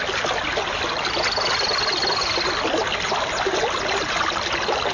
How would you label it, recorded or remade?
recorded